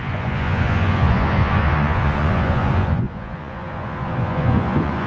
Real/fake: fake